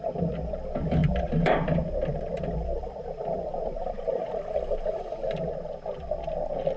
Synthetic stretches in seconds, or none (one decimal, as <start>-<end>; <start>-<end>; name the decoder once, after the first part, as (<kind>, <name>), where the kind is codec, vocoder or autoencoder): 1.0-4.5 (vocoder, BigVGAN v2)